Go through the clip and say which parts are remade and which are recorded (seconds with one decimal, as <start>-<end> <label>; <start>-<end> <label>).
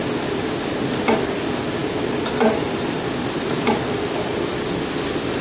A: 0.0-5.4 recorded